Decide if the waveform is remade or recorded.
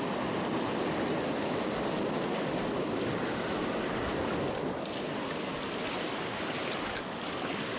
recorded